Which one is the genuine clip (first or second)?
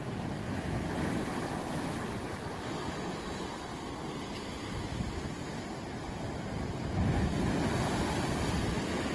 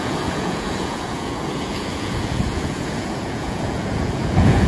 first